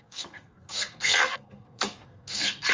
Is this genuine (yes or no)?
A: no